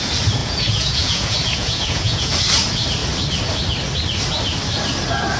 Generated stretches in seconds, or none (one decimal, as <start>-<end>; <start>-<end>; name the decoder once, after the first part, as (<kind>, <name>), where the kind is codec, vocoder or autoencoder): 0.4-2.3 (vocoder, Vocos)